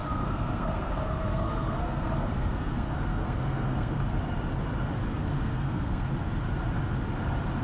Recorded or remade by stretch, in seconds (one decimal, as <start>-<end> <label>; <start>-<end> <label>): 0.0-4.2 remade; 4.2-5.1 recorded; 5.1-6.1 remade; 6.1-7.6 recorded